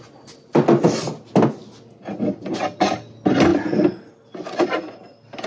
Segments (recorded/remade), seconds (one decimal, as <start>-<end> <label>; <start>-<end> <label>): 0.0-5.5 recorded